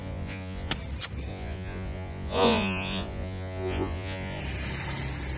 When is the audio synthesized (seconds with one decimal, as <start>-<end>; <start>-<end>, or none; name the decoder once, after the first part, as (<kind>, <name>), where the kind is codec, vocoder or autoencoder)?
0.0-0.7 (vocoder, Vocos); 1.3-4.4

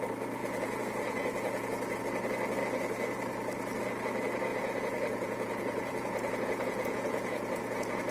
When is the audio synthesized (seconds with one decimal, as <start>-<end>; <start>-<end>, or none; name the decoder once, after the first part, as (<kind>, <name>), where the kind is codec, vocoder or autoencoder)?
0.4-2.0 (vocoder, Vocos); 4.5-8.1

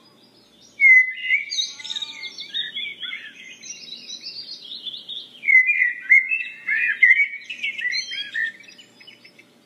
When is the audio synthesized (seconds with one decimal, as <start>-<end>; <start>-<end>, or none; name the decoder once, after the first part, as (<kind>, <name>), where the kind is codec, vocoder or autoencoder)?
2.9-3.5 (vocoder, Vocos); 5.8-7.1

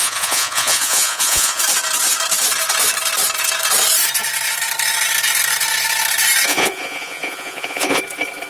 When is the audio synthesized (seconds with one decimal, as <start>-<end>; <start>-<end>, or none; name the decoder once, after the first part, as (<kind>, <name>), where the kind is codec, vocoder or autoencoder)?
0.0-1.6 (vocoder, Vocos); 6.5-8.0

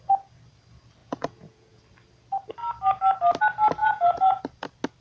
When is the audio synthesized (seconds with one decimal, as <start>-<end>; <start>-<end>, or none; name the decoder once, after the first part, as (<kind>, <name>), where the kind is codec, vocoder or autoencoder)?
1.0-1.8 (vocoder, Vocos); 3.8-4.4

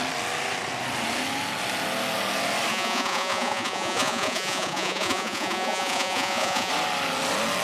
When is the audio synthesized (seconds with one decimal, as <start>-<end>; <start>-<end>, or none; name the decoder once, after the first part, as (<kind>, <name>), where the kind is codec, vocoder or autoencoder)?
2.7-6.7 (vocoder, Vocos)

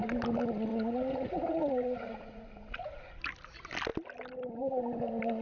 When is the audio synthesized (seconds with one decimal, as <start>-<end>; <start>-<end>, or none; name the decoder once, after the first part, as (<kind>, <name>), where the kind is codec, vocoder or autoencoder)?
0.7-3.1 (vocoder, Vocos)

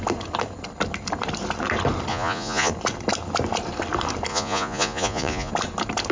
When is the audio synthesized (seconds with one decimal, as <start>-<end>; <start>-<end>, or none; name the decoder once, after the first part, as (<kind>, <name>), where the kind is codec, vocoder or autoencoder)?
2.1-2.7 (vocoder, Vocos); 4.3-5.5